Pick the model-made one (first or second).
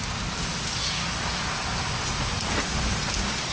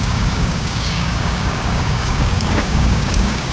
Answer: second